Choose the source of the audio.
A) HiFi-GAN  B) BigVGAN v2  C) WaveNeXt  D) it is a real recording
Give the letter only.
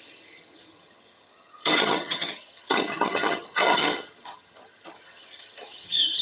A